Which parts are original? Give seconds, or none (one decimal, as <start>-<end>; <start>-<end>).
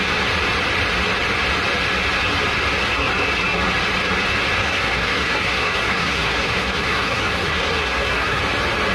0.0-4.6; 8.4-8.9